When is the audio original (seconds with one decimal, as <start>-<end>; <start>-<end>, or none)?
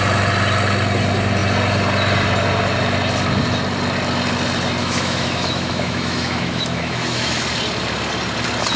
0.0-4.8; 7.4-8.8